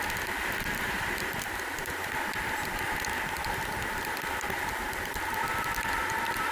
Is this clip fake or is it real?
real